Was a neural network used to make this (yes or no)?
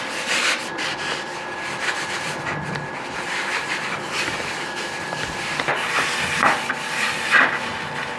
no